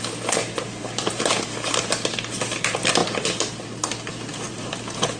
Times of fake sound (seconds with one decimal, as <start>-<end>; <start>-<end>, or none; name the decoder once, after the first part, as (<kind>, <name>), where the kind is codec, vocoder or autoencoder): none